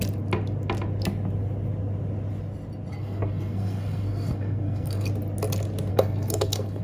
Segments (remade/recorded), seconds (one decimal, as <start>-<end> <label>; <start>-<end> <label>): 0.0-2.9 recorded; 2.9-5.1 remade; 5.1-5.9 recorded; 5.9-6.8 remade